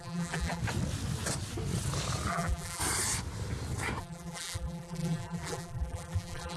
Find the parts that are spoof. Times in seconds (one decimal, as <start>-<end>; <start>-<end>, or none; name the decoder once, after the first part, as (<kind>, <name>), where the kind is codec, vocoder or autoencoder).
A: 0.0-0.6 (vocoder, BigVGAN v2); 2.3-2.8; 4.0-6.6